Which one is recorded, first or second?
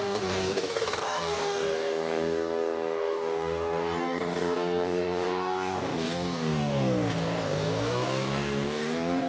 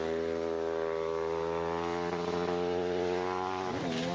second